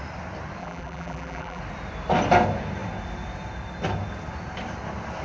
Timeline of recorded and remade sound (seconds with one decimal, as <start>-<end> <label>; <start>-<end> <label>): 0.0-0.6 recorded; 0.6-1.6 remade; 1.6-5.2 recorded